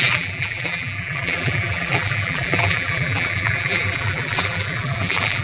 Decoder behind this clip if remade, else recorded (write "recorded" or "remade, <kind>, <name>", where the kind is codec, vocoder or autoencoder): remade, vocoder, BigVGAN v2